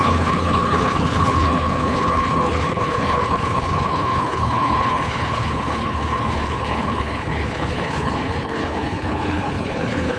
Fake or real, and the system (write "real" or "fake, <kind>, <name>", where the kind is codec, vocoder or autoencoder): fake, codec, HILCodec